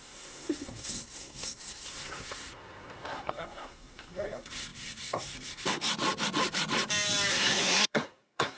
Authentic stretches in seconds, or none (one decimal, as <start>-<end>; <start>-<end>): 5.9-7.3